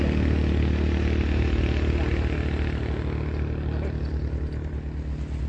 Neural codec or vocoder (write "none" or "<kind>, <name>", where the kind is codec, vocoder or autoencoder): none